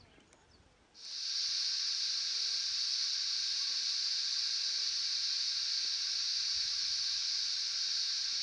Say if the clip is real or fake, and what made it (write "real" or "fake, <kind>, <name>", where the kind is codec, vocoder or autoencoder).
real